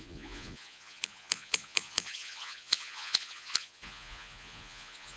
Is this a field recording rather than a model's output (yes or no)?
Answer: no